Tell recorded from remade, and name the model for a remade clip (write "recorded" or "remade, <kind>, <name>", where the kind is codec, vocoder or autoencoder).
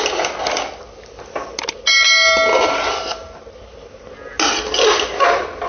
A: recorded